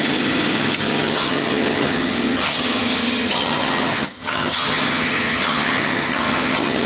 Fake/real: fake